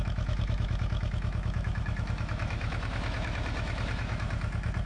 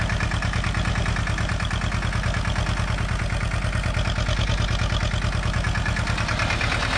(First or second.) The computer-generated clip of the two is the first